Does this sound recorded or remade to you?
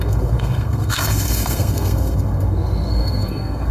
remade